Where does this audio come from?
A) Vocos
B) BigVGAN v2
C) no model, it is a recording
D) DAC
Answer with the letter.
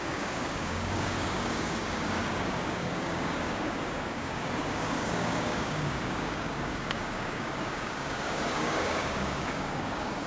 D